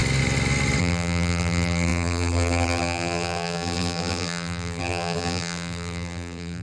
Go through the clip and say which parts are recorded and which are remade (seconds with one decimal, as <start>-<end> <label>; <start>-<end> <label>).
0.0-0.8 recorded; 0.8-6.6 remade